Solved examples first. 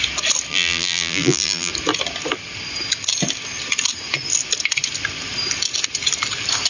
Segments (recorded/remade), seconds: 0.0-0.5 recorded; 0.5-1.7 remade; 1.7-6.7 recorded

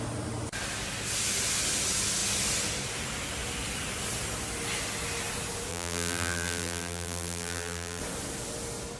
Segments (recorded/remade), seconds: 0.0-5.7 recorded; 5.7-8.0 remade; 8.0-9.0 recorded

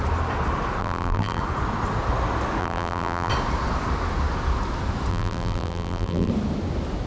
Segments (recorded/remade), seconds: 0.0-0.8 recorded; 0.8-1.4 remade; 1.4-2.6 recorded; 2.6-3.3 remade; 3.3-5.1 recorded; 5.1-6.3 remade; 6.3-7.1 recorded

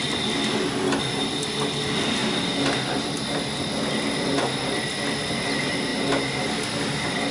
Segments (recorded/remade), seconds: 0.0-7.3 recorded

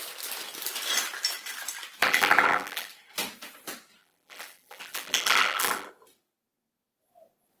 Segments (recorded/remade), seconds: 0.0-2.0 recorded; 2.0-2.9 remade; 2.9-4.0 recorded; 4.0-5.9 remade; 5.9-7.6 recorded

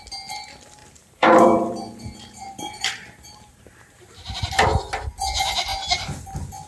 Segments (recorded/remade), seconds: 0.0-0.8 recorded; 0.8-4.4 remade; 4.4-6.7 recorded

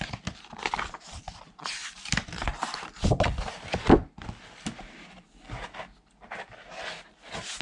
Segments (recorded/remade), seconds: 0.0-1.8 recorded; 1.8-6.3 remade; 6.3-7.6 recorded

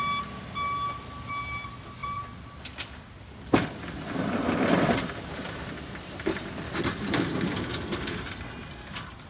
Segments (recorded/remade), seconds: 0.0-2.0 recorded; 2.0-7.0 remade; 7.0-9.3 recorded